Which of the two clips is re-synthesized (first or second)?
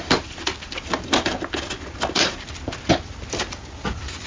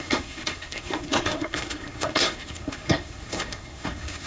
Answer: second